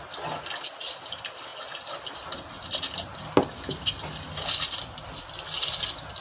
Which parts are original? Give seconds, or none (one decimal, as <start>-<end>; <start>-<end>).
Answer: 0.0-6.2